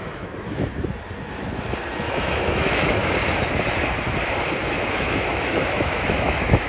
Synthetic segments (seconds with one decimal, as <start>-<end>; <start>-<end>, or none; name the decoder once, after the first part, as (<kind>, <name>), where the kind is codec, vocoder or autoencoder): 0.0-0.7 (autoencoder, DAC-VAE); 2.1-3.0; 4.9-6.7